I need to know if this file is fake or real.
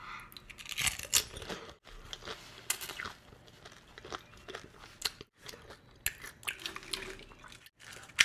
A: real